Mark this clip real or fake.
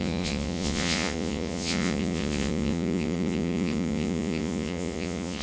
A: fake